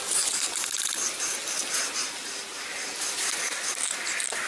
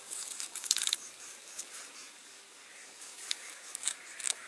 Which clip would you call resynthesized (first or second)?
second